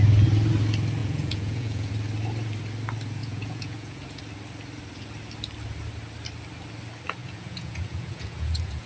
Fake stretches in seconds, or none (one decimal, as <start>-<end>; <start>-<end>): 1.0-1.9; 3.2-4.2; 7.2-8.9